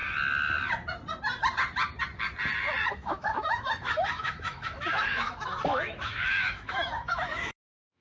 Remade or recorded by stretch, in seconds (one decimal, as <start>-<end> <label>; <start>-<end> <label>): 0.0-2.9 recorded; 2.9-8.0 remade